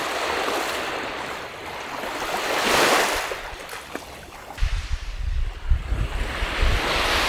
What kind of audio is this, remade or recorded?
recorded